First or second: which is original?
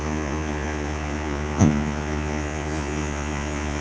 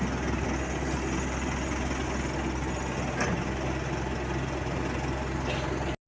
second